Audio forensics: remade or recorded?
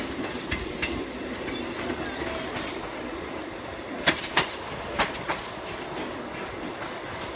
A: recorded